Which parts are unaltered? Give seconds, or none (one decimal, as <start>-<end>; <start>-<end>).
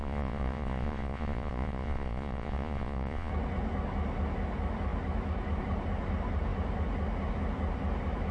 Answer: 3.3-8.3